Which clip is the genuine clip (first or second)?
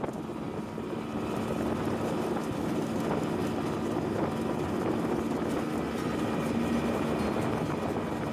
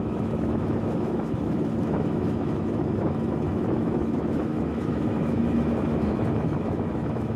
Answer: first